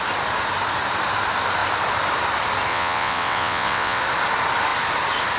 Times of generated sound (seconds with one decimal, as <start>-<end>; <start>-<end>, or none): 2.7-4.0